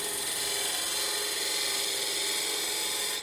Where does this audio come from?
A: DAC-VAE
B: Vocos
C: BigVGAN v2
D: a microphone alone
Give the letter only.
D